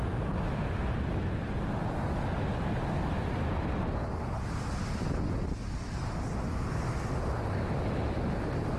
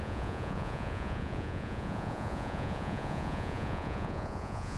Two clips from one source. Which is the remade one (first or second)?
second